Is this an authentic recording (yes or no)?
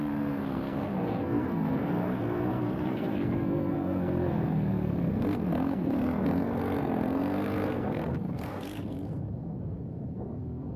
no